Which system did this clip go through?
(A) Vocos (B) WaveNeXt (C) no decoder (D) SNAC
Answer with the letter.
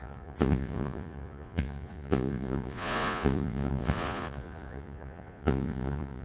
A